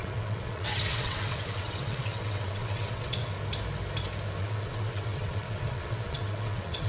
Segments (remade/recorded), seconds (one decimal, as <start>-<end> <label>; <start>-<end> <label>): 0.0-3.2 remade; 3.2-4.4 recorded; 4.4-6.9 remade